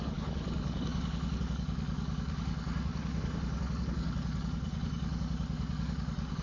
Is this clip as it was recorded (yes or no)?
no